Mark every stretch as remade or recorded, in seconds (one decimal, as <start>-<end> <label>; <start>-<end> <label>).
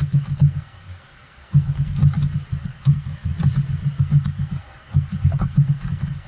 0.0-2.0 remade; 2.0-2.6 recorded; 2.6-3.3 remade; 3.3-4.0 recorded; 4.0-6.3 remade